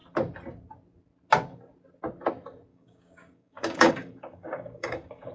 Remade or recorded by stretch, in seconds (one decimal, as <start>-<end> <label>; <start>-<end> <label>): 0.0-2.7 recorded; 2.7-5.3 remade